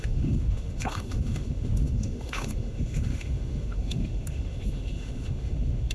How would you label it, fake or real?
fake